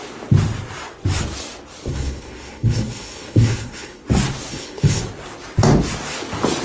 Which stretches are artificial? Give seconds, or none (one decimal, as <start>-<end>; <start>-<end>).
1.9-4.0; 4.5-5.0